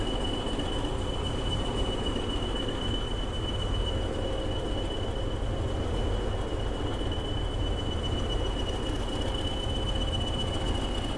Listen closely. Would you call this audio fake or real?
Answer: real